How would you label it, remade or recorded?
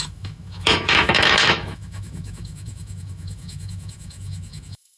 remade